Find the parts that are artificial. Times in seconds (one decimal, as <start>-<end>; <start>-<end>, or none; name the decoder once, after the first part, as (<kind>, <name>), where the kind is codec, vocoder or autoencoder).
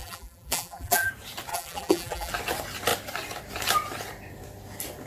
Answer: 0.0-1.1 (vocoder, BigVGAN v2); 1.5-2.3